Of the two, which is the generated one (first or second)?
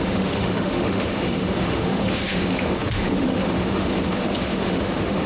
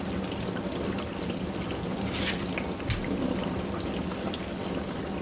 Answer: first